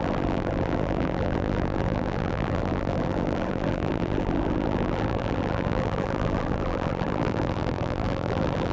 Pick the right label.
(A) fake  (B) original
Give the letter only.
A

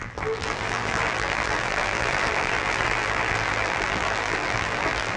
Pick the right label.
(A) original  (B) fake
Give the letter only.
B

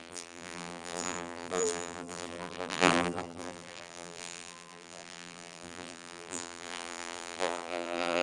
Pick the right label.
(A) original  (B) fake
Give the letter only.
B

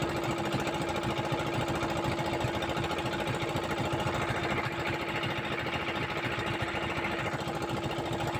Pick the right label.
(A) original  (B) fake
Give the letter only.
A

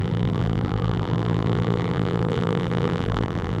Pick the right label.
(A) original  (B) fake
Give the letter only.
B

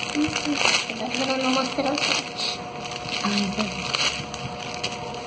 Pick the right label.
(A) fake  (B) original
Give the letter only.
B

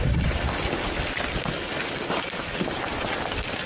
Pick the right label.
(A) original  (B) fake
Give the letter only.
A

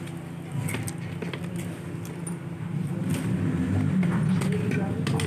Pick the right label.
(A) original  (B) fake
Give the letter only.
A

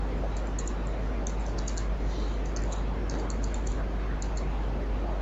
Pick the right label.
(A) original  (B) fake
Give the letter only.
A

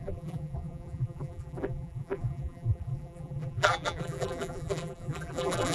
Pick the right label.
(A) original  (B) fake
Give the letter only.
B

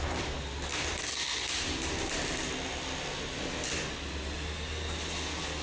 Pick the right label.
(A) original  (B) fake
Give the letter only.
A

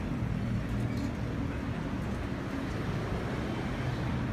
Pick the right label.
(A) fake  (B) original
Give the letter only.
B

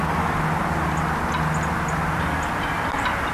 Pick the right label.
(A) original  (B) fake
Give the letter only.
A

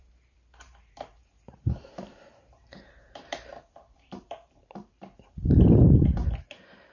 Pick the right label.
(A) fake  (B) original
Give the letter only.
A